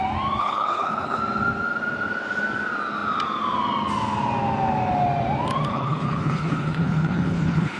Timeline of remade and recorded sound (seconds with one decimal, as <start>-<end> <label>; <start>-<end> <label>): 0.0-0.4 recorded; 0.4-1.2 remade; 1.2-5.7 recorded; 5.7-7.8 remade